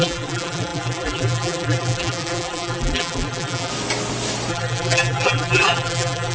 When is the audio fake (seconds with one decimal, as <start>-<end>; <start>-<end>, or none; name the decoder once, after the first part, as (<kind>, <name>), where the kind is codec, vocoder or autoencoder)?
0.0-3.7 (vocoder, BigVGAN v2); 4.5-6.3